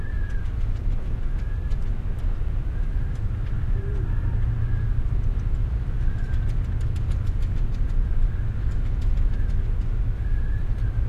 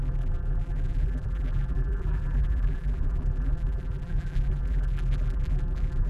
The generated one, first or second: second